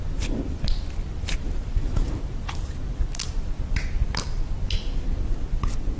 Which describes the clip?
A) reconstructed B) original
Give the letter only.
B